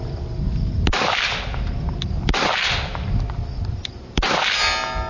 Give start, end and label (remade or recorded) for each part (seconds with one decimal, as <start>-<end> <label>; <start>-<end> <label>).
0.0-5.1 recorded